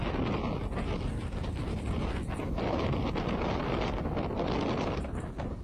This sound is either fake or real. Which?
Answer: real